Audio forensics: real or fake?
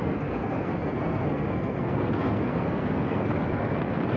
fake